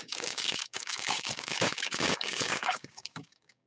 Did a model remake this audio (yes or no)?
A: yes